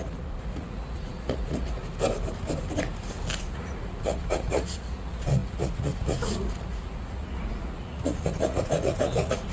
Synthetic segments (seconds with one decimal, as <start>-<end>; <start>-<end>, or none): 0.0-1.8; 3.4-9.5